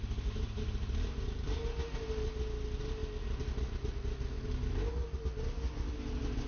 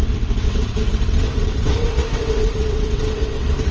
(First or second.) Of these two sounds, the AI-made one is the second